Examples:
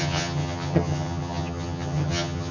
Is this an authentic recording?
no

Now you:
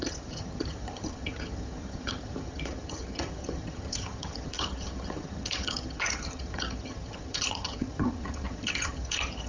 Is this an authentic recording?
no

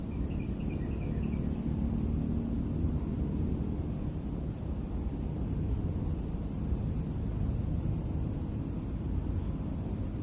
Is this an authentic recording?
yes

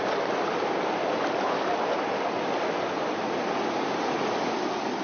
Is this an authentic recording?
yes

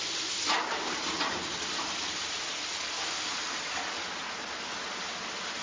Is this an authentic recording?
yes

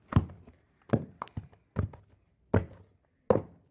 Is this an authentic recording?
yes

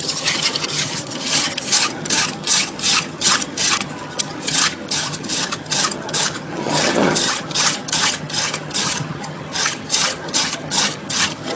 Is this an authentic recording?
no